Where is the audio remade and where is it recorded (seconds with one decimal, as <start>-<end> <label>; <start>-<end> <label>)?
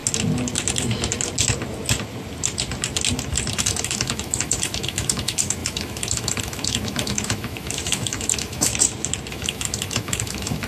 0.0-3.6 recorded; 3.6-8.7 remade; 8.7-9.3 recorded; 9.3-10.7 remade